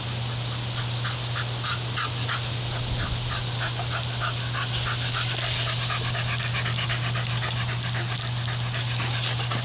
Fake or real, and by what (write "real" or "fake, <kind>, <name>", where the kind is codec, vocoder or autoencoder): real